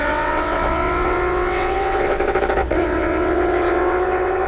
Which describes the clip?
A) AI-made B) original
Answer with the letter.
A